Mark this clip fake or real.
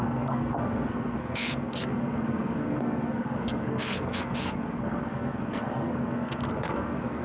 fake